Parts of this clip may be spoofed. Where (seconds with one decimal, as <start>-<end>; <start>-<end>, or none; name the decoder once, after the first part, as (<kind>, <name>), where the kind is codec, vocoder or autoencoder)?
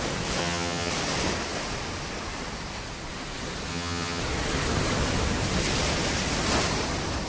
0.4-0.9 (vocoder, HiFi-GAN); 3.7-4.2